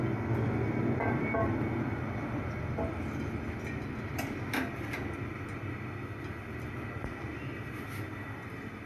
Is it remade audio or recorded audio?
recorded